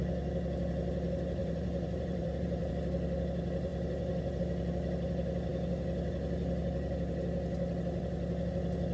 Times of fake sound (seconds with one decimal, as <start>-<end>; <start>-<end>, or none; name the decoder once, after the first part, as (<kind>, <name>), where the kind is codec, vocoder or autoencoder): 1.4-2.7 (vocoder, BigVGAN v2)